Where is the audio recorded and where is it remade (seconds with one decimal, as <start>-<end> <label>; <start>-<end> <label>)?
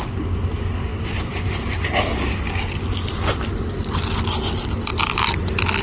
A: 0.0-5.8 recorded